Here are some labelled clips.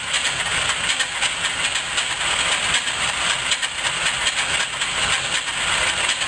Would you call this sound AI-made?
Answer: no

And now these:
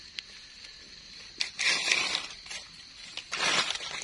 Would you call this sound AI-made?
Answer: yes